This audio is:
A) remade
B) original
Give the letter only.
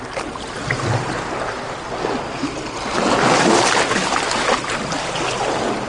B